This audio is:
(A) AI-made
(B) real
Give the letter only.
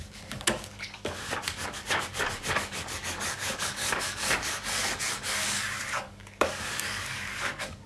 A